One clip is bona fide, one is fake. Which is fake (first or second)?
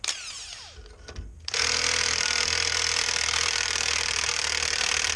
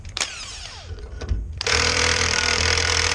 second